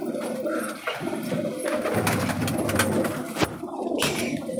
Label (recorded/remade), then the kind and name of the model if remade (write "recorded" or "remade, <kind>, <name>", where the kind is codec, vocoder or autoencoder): recorded